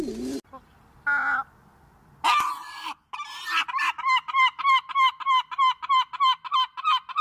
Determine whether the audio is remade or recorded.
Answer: recorded